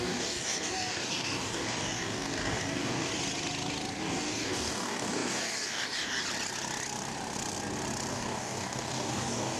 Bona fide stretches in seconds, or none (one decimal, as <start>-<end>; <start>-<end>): 3.1-4.0; 6.2-8.1